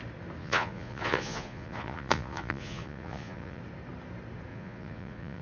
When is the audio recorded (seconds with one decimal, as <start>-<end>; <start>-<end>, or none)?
0.0-0.4; 3.6-4.5